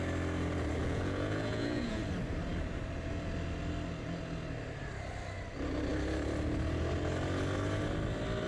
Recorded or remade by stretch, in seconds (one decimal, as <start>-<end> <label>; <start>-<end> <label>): 0.0-0.8 recorded; 0.8-2.0 remade; 2.0-8.5 recorded